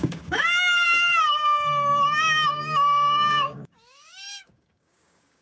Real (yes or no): no